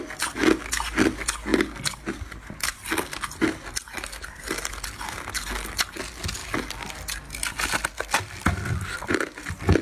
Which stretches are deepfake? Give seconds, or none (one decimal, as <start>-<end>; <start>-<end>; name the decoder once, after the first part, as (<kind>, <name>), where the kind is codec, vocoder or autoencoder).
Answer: none